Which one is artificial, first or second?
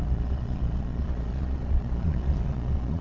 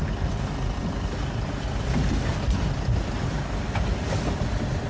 first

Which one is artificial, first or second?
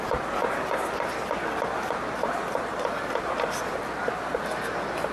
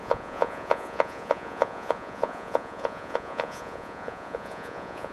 second